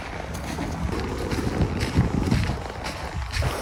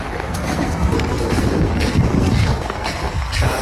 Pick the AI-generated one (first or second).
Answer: second